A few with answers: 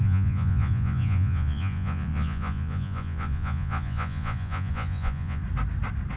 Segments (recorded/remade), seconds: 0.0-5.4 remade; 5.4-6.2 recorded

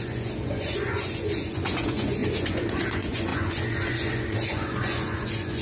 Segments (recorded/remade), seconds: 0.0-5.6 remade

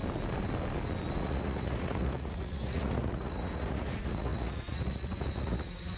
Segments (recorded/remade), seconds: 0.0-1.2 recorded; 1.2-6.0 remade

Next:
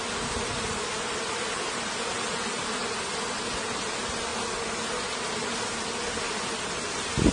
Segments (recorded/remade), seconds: 0.0-7.3 recorded

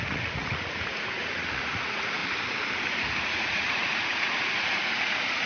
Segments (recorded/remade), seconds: 0.0-2.2 remade; 2.2-2.9 recorded; 2.9-5.5 remade